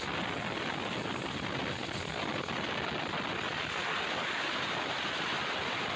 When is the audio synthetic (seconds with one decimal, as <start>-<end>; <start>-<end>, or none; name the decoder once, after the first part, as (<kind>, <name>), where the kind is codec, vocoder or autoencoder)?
none